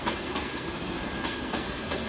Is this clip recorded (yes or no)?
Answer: no